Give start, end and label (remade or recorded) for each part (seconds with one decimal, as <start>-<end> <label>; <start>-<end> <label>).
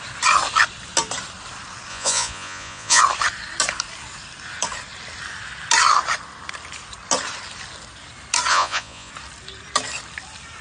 0.0-1.9 recorded; 1.9-3.0 remade; 3.0-8.5 recorded; 8.5-9.1 remade; 9.1-10.6 recorded